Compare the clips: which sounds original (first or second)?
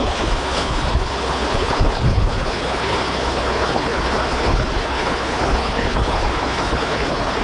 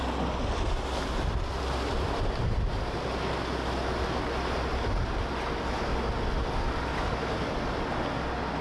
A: second